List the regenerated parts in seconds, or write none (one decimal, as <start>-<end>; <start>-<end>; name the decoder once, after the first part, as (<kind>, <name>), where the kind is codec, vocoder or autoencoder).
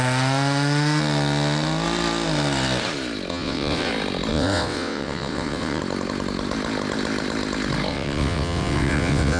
3.3-3.9 (vocoder, WaveNeXt); 4.3-5.8; 7.9-9.4